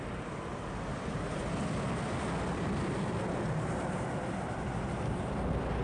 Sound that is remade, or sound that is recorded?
recorded